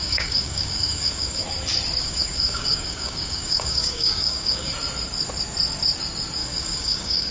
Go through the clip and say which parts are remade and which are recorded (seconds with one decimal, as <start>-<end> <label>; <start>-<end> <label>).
0.0-1.4 remade; 1.4-2.0 recorded; 2.0-4.7 remade; 4.7-6.4 recorded; 6.4-7.3 remade